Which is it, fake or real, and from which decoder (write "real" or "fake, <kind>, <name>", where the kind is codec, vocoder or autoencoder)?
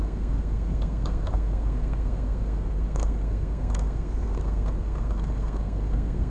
fake, codec, SNAC